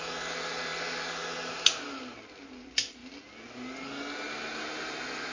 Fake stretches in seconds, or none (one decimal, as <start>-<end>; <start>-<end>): none